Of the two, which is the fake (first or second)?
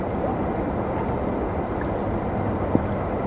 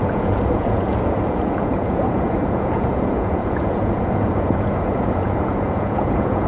second